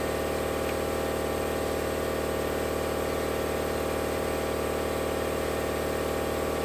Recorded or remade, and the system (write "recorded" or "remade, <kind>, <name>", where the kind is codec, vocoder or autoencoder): recorded